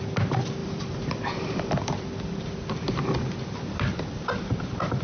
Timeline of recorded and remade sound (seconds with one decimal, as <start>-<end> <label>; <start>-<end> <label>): 0.0-0.6 recorded; 0.6-2.5 remade; 2.5-5.0 recorded